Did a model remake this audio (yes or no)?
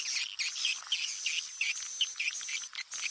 no